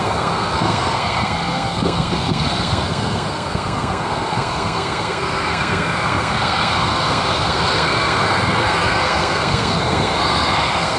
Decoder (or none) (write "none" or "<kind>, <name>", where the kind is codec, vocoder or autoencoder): codec, SNAC